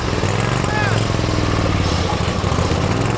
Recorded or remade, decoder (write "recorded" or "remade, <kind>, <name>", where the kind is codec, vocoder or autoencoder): recorded